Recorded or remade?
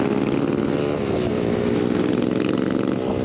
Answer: recorded